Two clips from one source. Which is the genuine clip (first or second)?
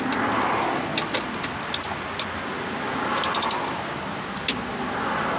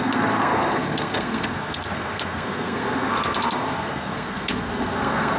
first